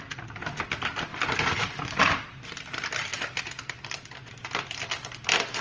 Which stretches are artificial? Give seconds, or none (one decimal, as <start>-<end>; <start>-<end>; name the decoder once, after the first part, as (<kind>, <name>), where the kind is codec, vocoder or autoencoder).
1.1-1.6 (vocoder, BigVGAN v2); 3.1-4.0